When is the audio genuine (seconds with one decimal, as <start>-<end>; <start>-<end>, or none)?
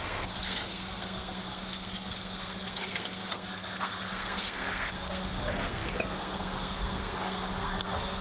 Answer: none